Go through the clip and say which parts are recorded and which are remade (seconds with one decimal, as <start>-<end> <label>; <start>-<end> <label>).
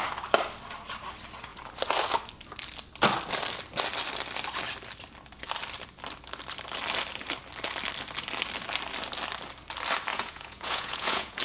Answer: 0.0-10.1 recorded; 10.1-11.4 remade